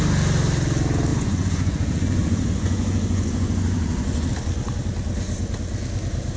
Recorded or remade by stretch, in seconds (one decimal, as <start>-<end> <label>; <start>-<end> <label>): 0.0-1.1 recorded; 1.1-4.3 remade; 4.3-6.4 recorded